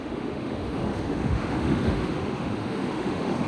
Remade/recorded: remade